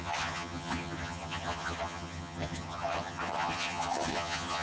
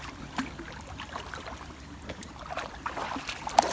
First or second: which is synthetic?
first